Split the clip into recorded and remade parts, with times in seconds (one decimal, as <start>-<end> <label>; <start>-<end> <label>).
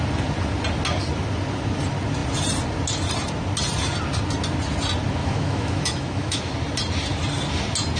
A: 0.0-5.2 recorded; 5.2-6.5 remade; 6.5-8.0 recorded